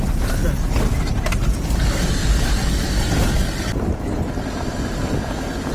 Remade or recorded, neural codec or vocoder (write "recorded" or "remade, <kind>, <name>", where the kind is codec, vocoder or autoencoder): recorded